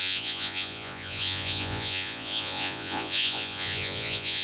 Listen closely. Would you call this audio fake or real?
fake